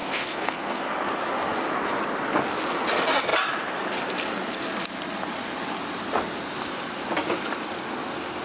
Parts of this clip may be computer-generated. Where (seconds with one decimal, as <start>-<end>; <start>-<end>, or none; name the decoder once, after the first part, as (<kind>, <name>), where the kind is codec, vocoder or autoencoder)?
0.0-0.8 (codec, SNAC)